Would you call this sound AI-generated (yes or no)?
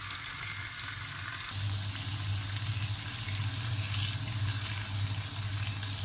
no